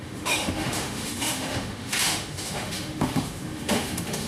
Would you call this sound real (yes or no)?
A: no